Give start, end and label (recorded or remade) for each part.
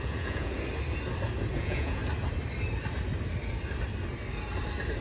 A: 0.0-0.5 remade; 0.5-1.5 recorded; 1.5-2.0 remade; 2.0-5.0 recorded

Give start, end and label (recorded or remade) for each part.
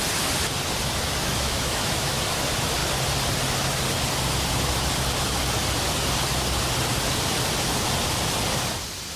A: 0.0-1.2 recorded; 1.2-2.2 remade; 2.2-9.2 recorded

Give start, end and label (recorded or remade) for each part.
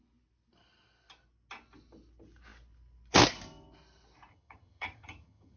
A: 0.0-4.3 recorded; 4.3-5.6 remade